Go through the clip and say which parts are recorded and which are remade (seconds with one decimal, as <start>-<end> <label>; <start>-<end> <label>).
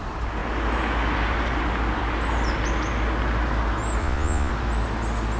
0.0-4.0 recorded; 4.0-4.5 remade; 4.5-5.4 recorded